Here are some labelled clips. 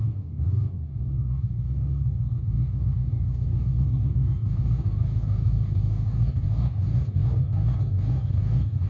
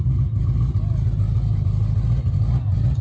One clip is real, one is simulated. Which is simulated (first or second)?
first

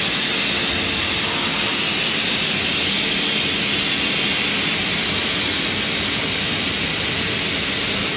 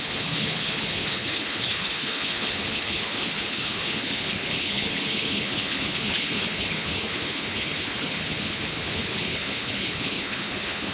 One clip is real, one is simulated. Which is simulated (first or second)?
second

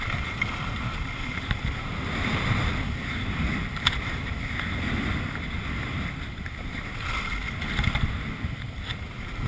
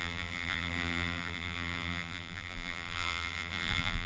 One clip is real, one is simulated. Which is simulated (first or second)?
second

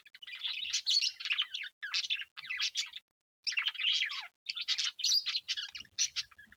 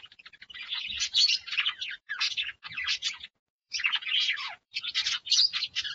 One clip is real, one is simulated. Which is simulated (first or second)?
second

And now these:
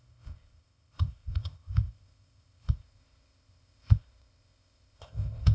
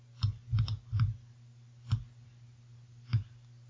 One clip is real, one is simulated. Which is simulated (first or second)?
first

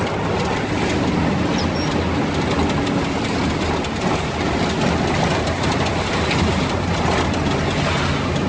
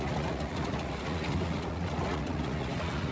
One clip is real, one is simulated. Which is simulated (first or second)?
second